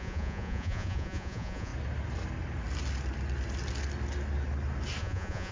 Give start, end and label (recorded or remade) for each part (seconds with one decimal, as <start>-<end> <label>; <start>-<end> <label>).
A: 0.0-1.7 remade; 1.7-5.0 recorded; 5.0-5.5 remade